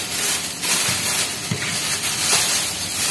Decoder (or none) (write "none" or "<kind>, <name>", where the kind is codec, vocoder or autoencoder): none